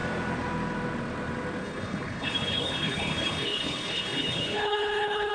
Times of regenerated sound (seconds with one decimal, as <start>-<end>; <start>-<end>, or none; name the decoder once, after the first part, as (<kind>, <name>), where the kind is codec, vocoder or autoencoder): 1.6-5.3 (codec, HILCodec)